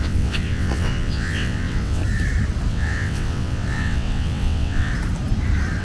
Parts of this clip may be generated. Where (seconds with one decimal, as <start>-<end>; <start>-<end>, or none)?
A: 0.0-2.0; 2.7-4.9

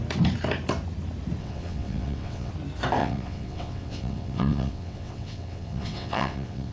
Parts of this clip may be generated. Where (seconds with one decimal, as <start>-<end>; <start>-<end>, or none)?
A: 1.4-2.5; 3.0-6.7